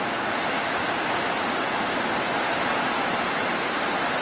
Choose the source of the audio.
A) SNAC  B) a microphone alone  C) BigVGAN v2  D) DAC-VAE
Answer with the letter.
B